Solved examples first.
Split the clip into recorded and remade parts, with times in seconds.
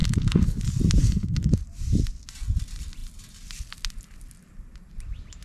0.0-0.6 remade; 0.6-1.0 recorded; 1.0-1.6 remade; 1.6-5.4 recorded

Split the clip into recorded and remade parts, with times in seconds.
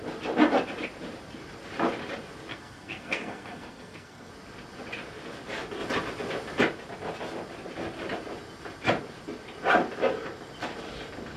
0.0-2.5 recorded; 2.5-4.3 remade; 4.3-11.4 recorded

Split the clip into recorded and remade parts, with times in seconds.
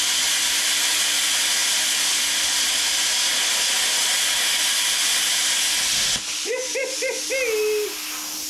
0.0-8.5 recorded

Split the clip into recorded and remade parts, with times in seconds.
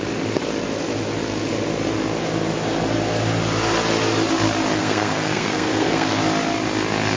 0.0-4.8 recorded; 4.8-6.1 remade; 6.1-7.2 recorded